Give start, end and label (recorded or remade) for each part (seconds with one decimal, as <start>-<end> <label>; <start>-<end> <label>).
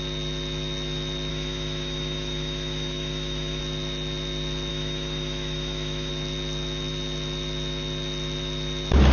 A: 0.0-1.3 recorded; 1.3-3.6 remade; 3.6-4.7 recorded; 4.7-6.1 remade; 6.1-9.1 recorded